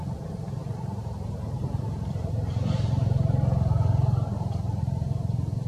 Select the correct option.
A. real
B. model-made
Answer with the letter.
B